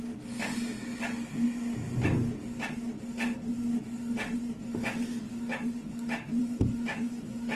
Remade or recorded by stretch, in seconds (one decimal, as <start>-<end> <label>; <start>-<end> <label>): 0.0-6.4 recorded; 6.4-7.6 remade